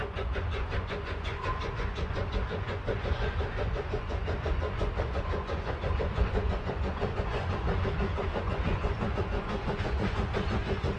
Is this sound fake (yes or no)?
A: yes